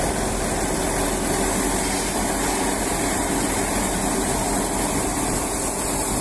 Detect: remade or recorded recorded